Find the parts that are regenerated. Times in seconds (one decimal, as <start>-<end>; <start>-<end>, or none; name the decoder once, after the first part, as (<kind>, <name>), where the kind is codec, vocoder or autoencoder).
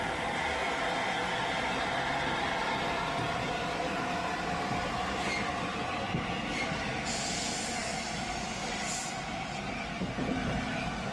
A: none